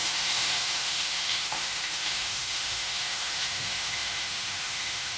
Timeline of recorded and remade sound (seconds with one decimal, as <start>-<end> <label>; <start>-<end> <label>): 0.0-5.2 remade

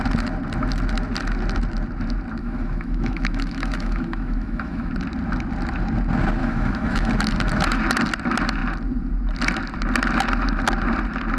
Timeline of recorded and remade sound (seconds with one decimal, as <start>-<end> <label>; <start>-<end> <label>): 0.0-2.4 recorded; 2.4-4.9 remade; 4.9-6.4 recorded; 6.4-7.1 remade; 7.1-11.4 recorded

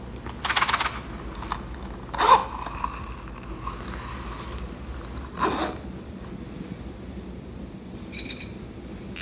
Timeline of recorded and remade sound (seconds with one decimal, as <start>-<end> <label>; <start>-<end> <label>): 0.0-9.2 recorded

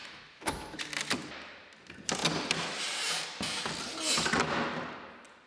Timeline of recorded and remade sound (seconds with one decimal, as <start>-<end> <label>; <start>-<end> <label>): 0.0-0.8 remade; 0.8-5.5 recorded

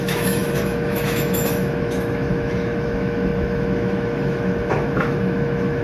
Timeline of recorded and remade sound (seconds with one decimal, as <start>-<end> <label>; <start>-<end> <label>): 0.0-5.8 remade

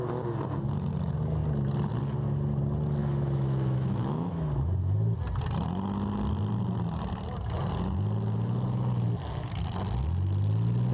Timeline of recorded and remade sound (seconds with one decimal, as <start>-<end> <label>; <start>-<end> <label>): 0.0-3.0 recorded; 3.0-4.7 remade; 4.7-10.9 recorded

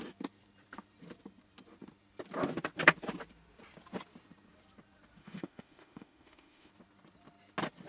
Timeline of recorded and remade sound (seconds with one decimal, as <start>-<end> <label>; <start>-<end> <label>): 0.0-5.2 recorded; 5.2-6.7 remade; 6.7-7.9 recorded

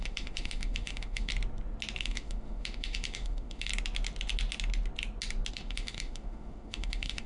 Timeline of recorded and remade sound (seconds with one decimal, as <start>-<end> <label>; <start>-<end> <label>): 0.0-1.3 remade; 1.3-2.0 recorded; 2.0-3.7 remade; 3.7-5.5 recorded; 5.5-7.3 remade